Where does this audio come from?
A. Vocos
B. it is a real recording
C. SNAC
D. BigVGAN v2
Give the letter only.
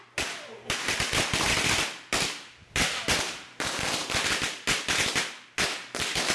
B